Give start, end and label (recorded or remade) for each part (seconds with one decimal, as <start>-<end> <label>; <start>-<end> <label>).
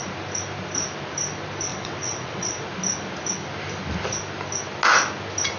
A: 0.0-1.7 recorded; 1.7-2.6 remade; 2.6-5.6 recorded